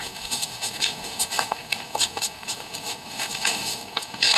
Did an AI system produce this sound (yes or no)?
yes